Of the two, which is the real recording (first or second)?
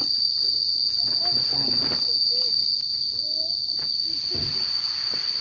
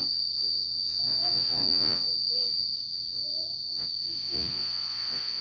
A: first